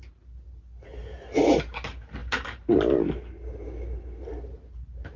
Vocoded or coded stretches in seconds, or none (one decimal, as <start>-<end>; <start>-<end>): none